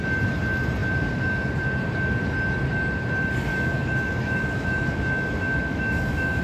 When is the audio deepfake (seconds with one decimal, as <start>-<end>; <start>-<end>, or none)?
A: 3.5-6.4